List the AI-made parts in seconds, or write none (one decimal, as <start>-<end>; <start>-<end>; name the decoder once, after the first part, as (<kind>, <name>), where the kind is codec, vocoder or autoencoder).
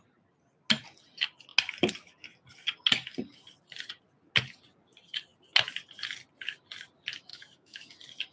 7.3-7.9 (autoencoder, DAC-VAE)